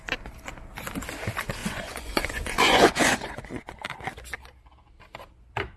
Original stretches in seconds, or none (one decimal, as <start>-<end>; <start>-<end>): 0.0-1.6; 3.8-5.8